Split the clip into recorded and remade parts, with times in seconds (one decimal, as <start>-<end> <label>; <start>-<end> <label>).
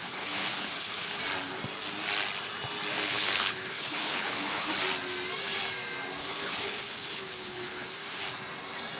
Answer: 0.0-1.2 remade; 1.2-2.9 recorded; 2.9-4.7 remade; 4.7-6.2 recorded; 6.2-8.2 remade; 8.2-9.0 recorded